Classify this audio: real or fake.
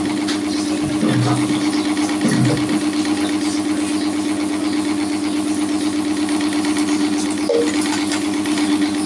real